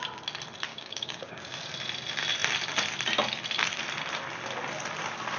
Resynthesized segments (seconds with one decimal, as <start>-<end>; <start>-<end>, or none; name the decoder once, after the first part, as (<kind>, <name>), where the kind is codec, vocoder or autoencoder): 0.7-1.4 (codec, DAC)